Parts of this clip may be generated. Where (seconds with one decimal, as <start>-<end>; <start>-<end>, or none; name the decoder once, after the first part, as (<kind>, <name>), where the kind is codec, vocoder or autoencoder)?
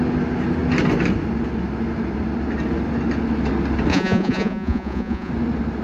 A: 3.9-5.3 (vocoder, Vocos)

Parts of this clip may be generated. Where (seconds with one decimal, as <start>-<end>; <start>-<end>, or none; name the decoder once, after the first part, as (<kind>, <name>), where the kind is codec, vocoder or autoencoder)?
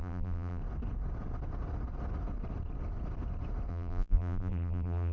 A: 0.0-0.6 (vocoder, BigVGAN v2); 3.7-5.1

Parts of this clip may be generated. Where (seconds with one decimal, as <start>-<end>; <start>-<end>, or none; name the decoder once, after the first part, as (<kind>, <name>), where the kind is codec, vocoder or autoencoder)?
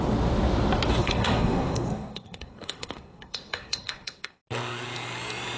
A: 1.0-4.4 (codec, SNAC)